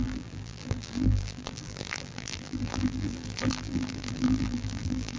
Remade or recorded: remade